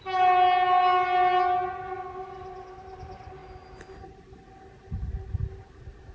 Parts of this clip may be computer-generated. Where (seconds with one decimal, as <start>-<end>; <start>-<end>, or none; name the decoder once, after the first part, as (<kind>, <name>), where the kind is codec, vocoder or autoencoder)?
none